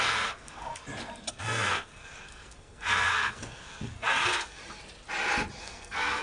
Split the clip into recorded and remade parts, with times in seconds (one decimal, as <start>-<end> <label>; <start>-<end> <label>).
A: 0.0-0.7 remade; 0.7-1.3 recorded; 1.3-4.6 remade; 4.6-5.6 recorded; 5.6-6.2 remade